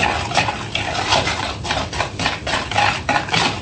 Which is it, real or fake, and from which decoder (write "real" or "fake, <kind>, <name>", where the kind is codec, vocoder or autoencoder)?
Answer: real